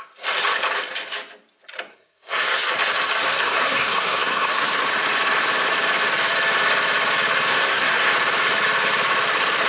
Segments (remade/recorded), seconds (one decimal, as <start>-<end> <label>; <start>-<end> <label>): 0.0-1.9 recorded; 1.9-2.7 remade; 2.7-3.3 recorded; 3.3-4.8 remade; 4.8-7.5 recorded; 7.5-8.1 remade; 8.1-9.7 recorded